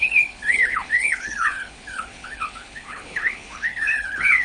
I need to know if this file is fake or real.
fake